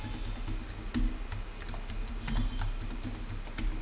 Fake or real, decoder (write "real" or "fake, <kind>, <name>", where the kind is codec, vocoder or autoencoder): real